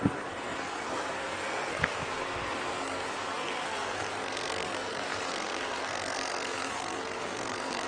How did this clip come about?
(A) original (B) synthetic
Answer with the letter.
B